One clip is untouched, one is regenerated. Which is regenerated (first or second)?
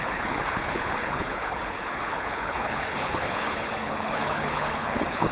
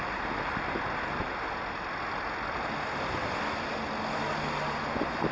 first